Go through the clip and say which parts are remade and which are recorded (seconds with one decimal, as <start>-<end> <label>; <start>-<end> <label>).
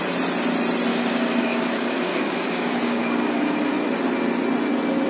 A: 0.0-0.9 recorded; 0.9-3.4 remade; 3.4-5.1 recorded